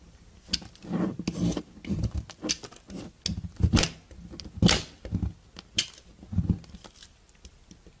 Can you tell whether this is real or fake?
real